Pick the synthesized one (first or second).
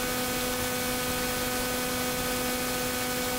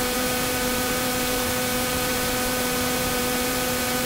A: second